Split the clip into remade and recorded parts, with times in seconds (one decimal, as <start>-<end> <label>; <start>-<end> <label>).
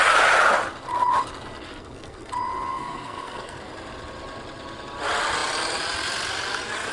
0.0-1.7 recorded; 1.7-2.3 remade; 2.3-2.7 recorded; 2.7-3.7 remade; 3.7-6.9 recorded